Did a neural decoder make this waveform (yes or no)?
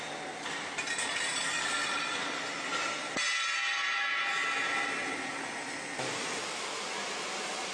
no